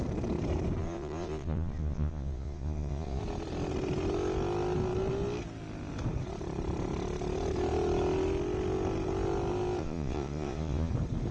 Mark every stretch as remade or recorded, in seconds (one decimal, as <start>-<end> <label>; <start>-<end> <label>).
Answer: 0.0-0.8 recorded; 0.8-3.2 remade; 3.2-9.8 recorded; 9.8-10.9 remade; 10.9-11.3 recorded